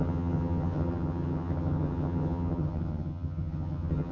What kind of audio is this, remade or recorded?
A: remade